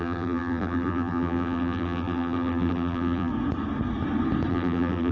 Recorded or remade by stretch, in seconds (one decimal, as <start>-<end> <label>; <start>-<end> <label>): 0.0-3.3 remade; 3.3-4.5 recorded; 4.5-5.1 remade